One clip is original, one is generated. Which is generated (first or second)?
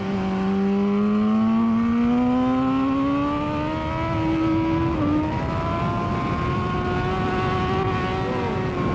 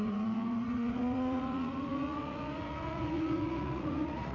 second